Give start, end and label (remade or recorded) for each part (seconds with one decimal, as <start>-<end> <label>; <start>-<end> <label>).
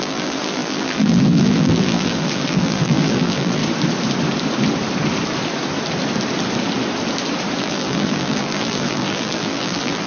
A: 0.0-3.6 remade; 3.6-7.6 recorded; 7.6-10.1 remade